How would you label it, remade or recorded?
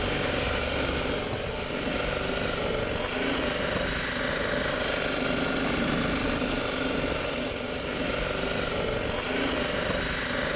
recorded